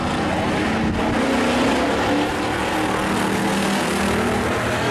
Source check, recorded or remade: recorded